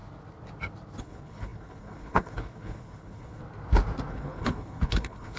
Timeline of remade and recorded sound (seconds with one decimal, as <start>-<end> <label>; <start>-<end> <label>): 0.0-1.0 recorded; 1.0-3.4 remade; 3.4-4.1 recorded; 4.1-5.4 remade